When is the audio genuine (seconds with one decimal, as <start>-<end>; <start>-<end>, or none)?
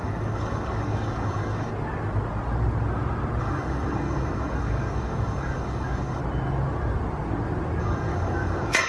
1.7-3.4; 6.2-7.8